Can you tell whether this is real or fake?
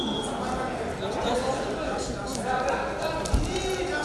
real